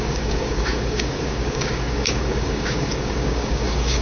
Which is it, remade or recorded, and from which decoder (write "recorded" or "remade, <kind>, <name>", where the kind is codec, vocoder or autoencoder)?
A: remade, codec, DAC